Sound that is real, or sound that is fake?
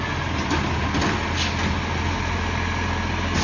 real